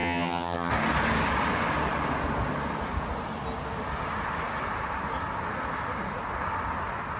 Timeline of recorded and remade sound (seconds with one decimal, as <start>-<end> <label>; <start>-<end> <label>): 0.0-0.7 remade; 0.7-7.2 recorded